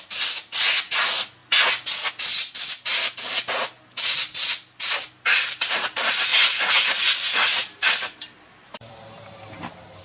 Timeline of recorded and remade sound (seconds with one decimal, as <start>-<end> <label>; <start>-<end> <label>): 0.0-7.6 recorded; 7.6-9.0 remade; 9.0-10.0 recorded